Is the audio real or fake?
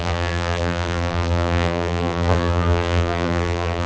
fake